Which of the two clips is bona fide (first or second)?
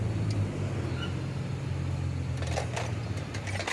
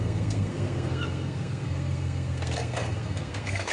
first